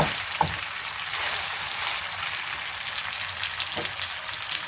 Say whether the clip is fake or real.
real